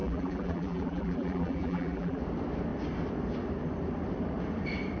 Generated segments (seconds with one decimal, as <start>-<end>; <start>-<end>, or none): 0.0-2.2